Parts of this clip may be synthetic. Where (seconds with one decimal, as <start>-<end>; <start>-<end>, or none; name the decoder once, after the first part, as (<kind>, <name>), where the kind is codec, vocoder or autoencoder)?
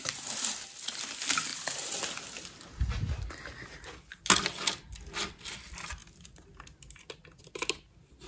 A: none